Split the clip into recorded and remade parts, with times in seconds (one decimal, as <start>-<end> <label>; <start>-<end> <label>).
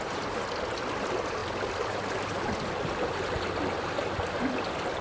0.0-5.0 recorded